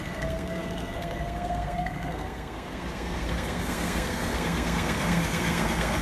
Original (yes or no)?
no